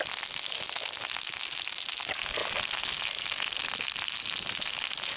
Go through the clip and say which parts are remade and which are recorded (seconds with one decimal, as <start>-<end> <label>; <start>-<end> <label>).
0.0-5.2 recorded